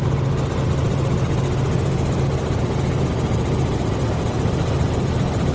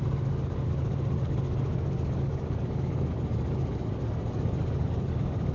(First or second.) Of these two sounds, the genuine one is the first